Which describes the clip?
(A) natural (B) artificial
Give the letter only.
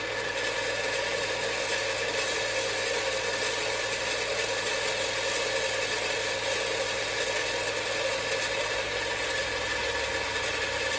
A